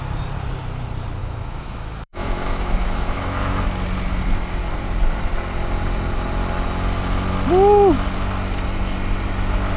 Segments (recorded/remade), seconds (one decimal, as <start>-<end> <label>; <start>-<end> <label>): 0.0-1.2 recorded; 1.2-3.6 remade; 3.6-9.8 recorded